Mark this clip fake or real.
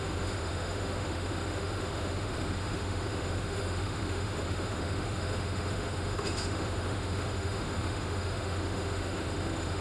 fake